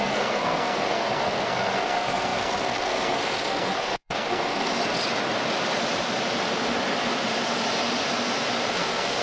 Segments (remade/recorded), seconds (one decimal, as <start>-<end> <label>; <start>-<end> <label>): 0.0-4.8 remade; 4.8-8.7 recorded; 8.7-9.2 remade